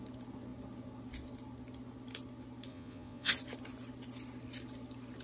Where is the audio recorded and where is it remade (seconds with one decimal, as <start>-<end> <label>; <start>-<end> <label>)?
0.0-2.7 recorded; 2.7-3.3 remade; 3.3-5.2 recorded